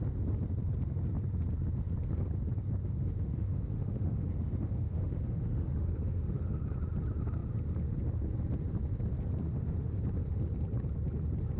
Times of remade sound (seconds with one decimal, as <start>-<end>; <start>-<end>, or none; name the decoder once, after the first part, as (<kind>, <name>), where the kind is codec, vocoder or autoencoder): 2.8-6.6 (autoencoder, DAC-VAE); 9.4-10.0